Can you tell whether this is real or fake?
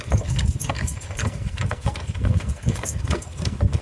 fake